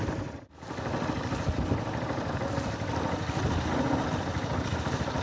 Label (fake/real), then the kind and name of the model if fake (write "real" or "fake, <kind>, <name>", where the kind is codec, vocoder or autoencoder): fake, vocoder, BigVGAN v2